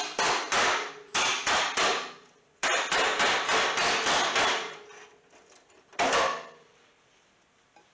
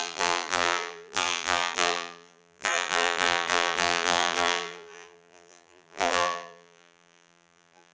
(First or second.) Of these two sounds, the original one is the first